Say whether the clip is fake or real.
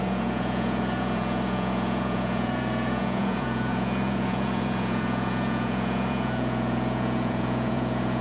fake